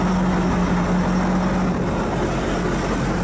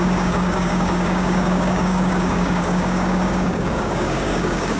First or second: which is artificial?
second